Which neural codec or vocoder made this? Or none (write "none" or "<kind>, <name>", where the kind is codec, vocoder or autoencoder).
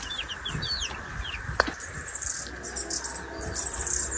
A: none